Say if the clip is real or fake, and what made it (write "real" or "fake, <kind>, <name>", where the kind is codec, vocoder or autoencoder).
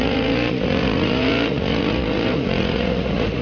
fake, vocoder, Vocos